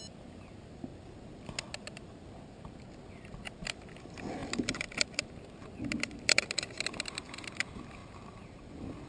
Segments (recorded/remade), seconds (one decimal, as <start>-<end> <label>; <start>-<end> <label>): 0.0-9.1 recorded